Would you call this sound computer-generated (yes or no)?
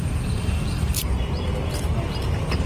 no